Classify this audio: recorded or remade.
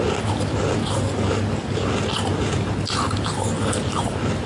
recorded